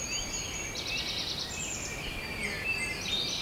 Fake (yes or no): no